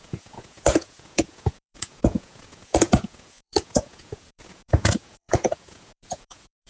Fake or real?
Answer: fake